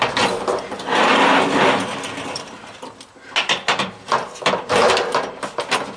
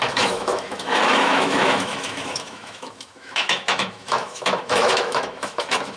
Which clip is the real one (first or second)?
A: first